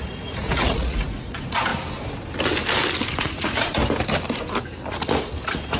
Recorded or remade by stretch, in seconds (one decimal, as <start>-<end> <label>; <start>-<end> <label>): 0.0-1.7 remade; 1.7-3.2 recorded; 3.2-3.8 remade; 3.8-4.9 recorded; 4.9-5.8 remade